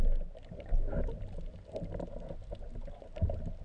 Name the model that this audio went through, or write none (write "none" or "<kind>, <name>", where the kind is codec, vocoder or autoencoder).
none